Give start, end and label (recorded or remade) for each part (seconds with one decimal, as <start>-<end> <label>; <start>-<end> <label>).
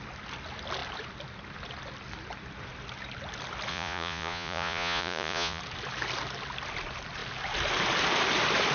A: 0.0-3.7 recorded; 3.7-5.6 remade; 5.6-8.7 recorded